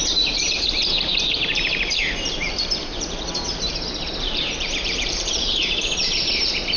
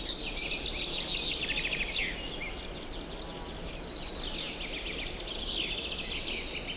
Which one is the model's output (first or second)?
first